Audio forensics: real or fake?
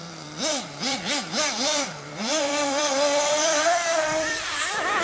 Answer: fake